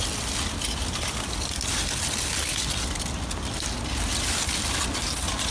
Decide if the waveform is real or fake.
real